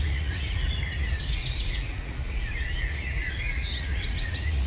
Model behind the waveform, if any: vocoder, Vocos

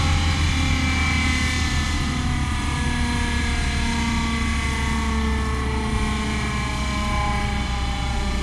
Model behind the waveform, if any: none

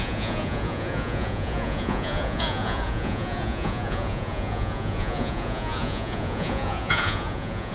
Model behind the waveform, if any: vocoder, Vocos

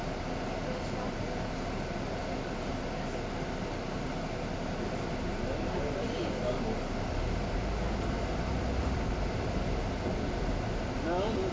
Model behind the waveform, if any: none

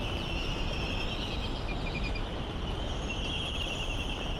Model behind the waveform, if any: vocoder, BigVGAN v2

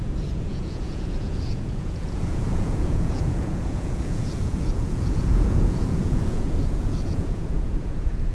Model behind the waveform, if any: vocoder, Vocos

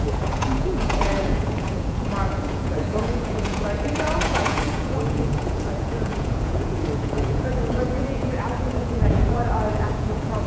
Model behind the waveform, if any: vocoder, Vocos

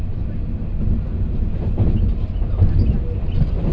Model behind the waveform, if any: none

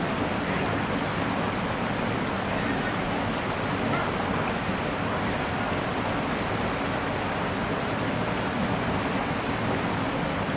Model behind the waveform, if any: none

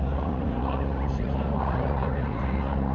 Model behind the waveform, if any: vocoder, Vocos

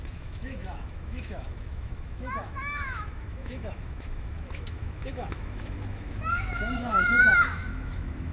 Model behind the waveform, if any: autoencoder, DAC-VAE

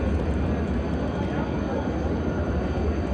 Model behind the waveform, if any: none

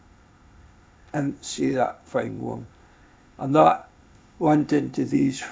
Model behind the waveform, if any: codec, ZipCodec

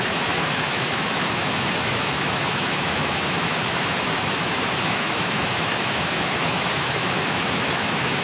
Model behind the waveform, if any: autoencoder, DAC-VAE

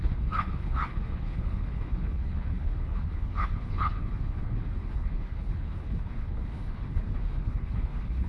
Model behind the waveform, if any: codec, HILCodec